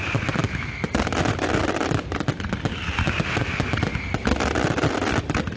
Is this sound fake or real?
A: real